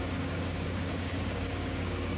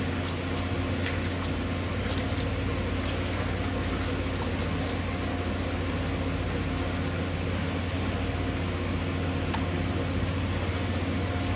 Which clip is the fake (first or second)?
first